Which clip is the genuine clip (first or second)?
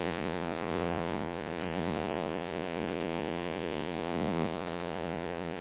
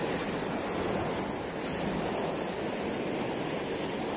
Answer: second